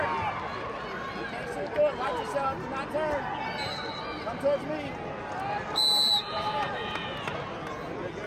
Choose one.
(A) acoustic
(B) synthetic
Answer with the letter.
A